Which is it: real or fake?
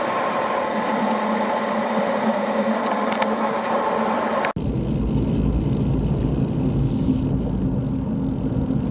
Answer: real